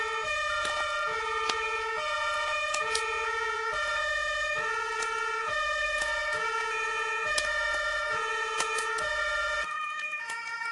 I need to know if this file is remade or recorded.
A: remade